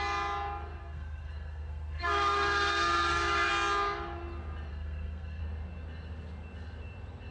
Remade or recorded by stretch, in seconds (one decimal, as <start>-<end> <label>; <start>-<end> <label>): 0.0-0.8 recorded; 0.8-3.5 remade; 3.5-4.7 recorded; 4.7-5.4 remade; 5.4-7.3 recorded